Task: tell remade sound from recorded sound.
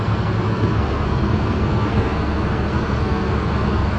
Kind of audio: remade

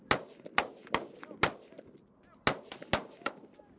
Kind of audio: recorded